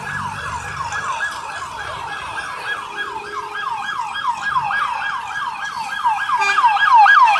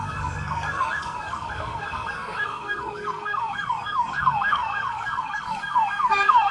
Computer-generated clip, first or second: second